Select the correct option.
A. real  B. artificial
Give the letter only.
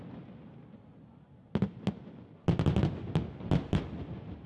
A